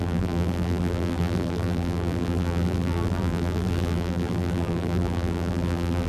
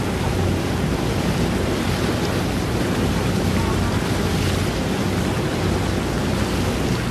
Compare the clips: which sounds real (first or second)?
second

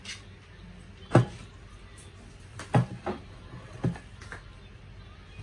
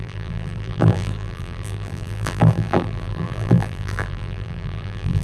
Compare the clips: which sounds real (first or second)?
first